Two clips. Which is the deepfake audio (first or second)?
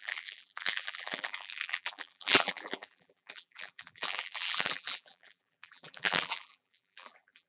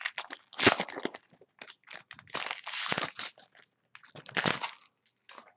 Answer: first